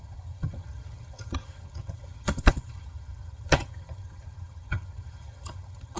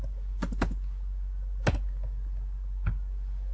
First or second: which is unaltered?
second